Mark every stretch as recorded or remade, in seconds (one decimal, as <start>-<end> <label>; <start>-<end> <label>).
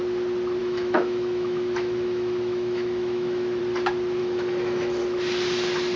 0.0-0.6 recorded; 0.6-3.6 remade; 3.6-4.2 recorded; 4.2-5.0 remade; 5.0-6.0 recorded